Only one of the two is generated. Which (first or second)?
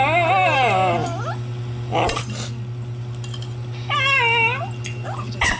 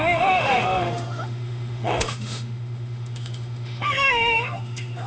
second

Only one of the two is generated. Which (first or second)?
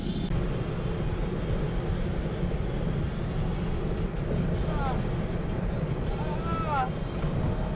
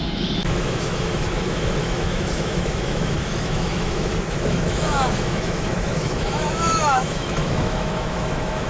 second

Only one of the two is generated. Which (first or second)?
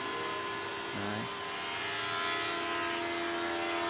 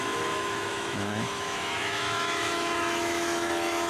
second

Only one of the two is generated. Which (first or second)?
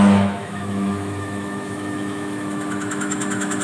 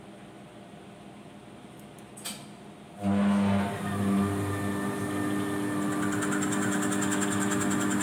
first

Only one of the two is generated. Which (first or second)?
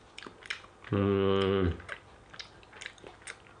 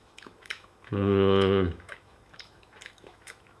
second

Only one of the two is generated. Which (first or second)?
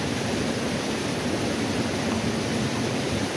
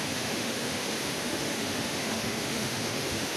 second